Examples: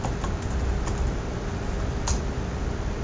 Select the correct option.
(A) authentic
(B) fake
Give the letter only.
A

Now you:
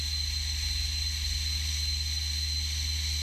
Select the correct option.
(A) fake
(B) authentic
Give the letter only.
B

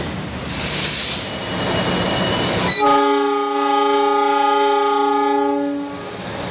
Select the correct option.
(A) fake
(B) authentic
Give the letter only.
B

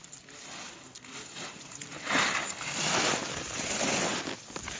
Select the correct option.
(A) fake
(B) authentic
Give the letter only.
B